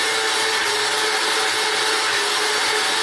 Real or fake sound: real